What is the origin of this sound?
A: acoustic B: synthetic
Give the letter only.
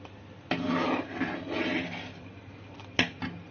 A